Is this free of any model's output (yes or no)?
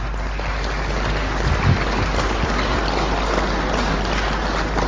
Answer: yes